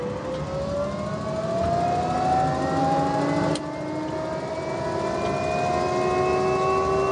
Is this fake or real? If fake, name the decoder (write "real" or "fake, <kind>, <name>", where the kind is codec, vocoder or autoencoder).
real